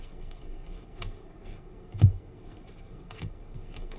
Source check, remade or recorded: remade